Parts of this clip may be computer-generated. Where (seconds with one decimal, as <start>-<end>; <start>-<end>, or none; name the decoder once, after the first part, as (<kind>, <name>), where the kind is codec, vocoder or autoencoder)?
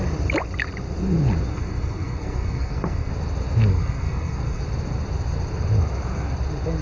1.5-3.1 (codec, SNAC); 3.7-4.6